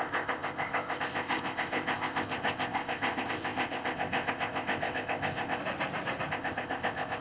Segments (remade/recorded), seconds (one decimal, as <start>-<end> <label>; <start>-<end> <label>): 0.0-5.6 remade; 5.6-6.3 recorded; 6.3-7.2 remade